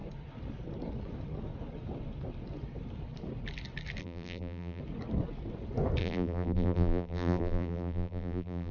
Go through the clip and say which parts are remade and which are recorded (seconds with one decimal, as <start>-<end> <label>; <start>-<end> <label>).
0.0-4.0 recorded; 4.0-4.8 remade; 4.8-6.0 recorded; 6.0-8.7 remade